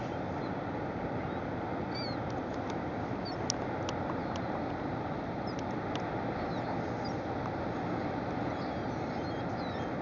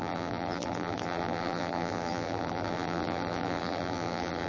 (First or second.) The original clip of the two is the first